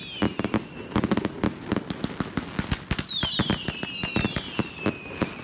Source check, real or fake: real